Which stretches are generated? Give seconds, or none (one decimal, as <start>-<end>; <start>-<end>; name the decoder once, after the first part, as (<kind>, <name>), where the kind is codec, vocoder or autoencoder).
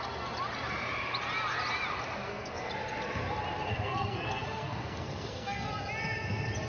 2.2-2.7 (codec, SNAC); 3.7-5.7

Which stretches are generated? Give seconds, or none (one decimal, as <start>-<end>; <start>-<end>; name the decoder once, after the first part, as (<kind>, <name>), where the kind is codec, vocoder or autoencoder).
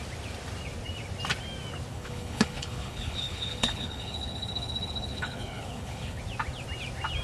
1.9-6.2 (codec, HILCodec)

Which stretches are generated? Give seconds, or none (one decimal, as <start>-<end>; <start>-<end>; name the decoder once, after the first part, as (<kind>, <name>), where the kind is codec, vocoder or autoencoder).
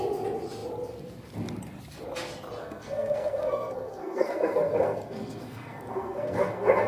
2.6-6.9 (codec, SNAC)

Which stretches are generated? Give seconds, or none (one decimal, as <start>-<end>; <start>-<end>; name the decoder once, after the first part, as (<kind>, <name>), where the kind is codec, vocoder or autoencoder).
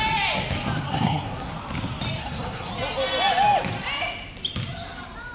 0.9-1.5 (codec, SNAC); 2.2-2.7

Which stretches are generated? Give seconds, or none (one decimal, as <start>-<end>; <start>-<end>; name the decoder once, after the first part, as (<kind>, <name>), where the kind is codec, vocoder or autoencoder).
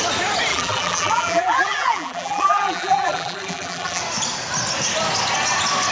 0.5-4.0 (vocoder, BigVGAN v2)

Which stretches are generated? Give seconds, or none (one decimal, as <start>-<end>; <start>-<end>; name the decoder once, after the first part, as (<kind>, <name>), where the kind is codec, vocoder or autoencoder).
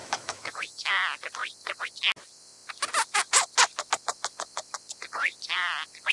0.0-0.9 (autoencoder, DAC-VAE)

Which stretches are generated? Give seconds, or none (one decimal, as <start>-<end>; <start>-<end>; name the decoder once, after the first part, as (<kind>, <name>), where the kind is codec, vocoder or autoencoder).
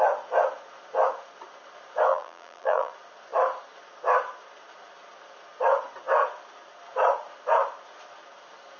2.1-2.9 (vocoder, BigVGAN v2)